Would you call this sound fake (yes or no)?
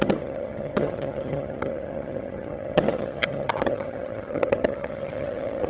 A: yes